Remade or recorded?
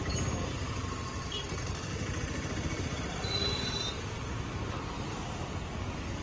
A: recorded